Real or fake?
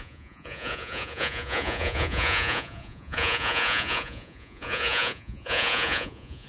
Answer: fake